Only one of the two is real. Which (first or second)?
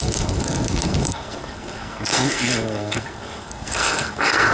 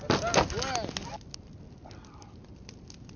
second